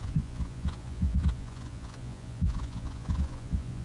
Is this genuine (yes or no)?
no